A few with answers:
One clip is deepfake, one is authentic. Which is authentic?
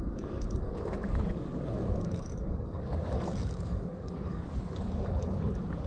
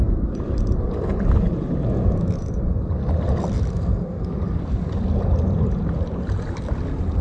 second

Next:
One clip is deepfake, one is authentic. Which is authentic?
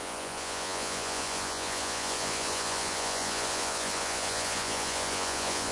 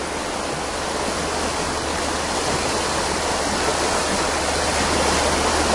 second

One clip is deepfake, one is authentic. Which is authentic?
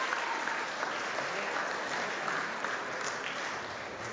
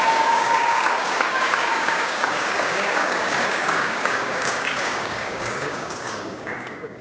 first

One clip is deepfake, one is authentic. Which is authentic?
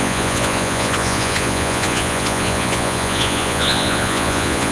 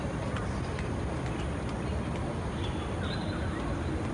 second